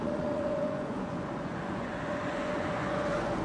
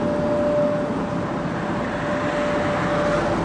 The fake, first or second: first